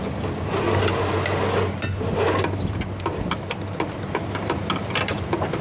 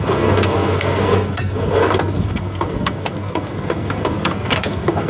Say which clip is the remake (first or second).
second